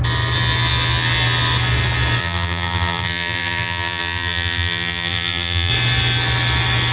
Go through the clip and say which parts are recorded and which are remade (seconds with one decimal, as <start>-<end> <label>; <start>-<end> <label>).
0.0-2.2 recorded; 2.2-5.7 remade; 5.7-6.9 recorded